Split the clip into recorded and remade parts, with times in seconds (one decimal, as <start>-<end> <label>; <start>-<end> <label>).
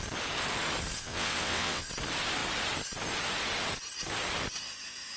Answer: 0.0-1.0 recorded; 1.0-1.9 remade; 1.9-5.2 recorded